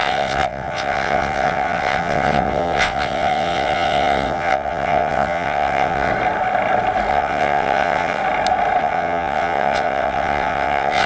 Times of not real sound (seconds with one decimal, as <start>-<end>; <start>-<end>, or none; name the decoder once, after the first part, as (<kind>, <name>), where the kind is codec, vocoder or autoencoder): 0.0-6.1 (vocoder, WaveNeXt); 7.1-8.2; 8.8-11.1

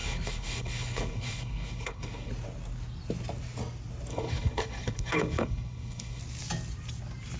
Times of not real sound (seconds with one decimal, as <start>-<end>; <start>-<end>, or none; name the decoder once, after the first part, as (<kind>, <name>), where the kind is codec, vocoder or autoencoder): 0.0-2.3 (codec, HILCodec); 4.1-6.2

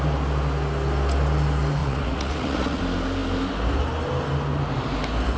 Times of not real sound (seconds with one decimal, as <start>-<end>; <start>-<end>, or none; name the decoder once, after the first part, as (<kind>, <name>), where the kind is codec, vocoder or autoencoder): 1.8-2.8 (vocoder, Vocos)

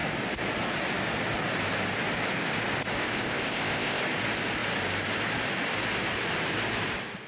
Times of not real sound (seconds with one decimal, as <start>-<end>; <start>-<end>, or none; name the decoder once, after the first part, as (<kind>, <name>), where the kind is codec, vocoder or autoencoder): 3.0-4.0 (codec, ZipCodec)